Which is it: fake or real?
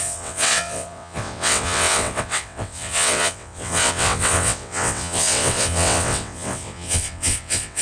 fake